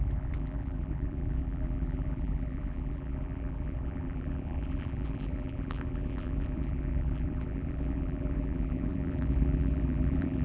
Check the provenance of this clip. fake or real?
fake